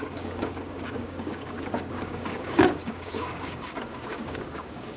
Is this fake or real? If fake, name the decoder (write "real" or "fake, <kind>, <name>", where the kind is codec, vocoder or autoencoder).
fake, codec, DAC